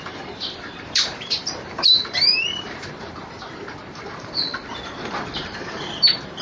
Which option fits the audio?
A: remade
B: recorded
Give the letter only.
A